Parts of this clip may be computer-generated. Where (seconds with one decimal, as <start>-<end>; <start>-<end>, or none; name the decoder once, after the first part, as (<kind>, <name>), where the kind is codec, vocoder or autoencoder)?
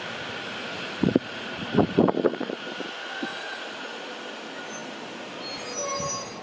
0.6-2.7 (vocoder, Vocos); 3.3-4.1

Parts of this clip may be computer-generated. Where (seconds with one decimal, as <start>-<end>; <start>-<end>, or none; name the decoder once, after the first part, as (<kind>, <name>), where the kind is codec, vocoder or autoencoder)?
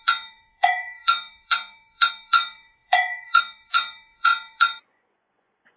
0.0-5.8 (vocoder, Vocos)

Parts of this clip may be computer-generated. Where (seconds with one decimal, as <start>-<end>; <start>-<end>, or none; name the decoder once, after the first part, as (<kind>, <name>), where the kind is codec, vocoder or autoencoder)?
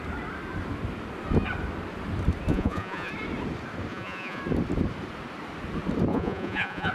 2.5-3.1 (vocoder, Vocos); 3.9-4.4; 6.1-6.9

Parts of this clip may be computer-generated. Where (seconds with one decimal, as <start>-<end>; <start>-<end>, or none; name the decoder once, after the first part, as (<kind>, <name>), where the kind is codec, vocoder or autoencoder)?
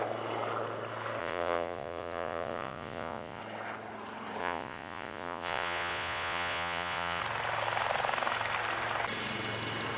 1.2-3.4 (vocoder, Vocos); 4.4-7.2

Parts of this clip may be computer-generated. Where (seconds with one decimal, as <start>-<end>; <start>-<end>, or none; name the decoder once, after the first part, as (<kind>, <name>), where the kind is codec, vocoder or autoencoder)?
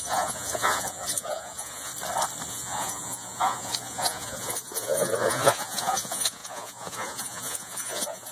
0.0-1.9 (vocoder, Vocos); 2.5-8.3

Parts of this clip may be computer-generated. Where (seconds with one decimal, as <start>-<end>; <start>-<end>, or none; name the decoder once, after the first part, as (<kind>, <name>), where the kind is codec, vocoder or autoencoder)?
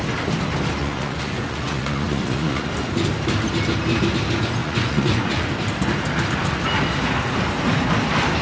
0.8-2.7 (vocoder, Vocos); 4.6-5.5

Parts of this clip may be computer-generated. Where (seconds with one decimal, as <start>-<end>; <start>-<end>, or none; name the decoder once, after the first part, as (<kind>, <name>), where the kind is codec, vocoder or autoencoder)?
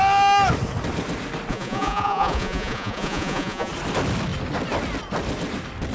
1.5-3.7 (vocoder, Vocos)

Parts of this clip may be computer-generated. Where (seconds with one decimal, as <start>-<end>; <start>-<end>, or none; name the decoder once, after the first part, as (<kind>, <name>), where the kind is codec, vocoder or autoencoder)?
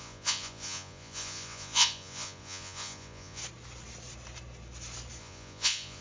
0.0-3.4 (vocoder, Vocos); 5.2-6.0